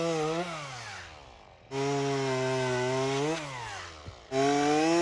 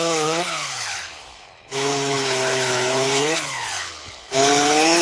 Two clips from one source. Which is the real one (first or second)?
first